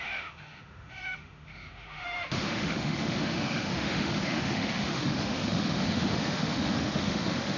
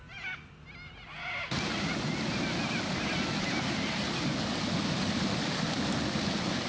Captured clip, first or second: second